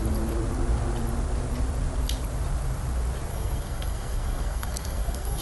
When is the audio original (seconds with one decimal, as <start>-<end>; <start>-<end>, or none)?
0.0-3.3